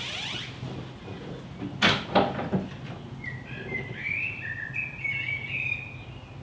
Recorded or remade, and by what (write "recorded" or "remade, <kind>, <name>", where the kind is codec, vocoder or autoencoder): recorded